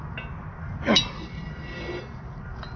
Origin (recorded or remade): recorded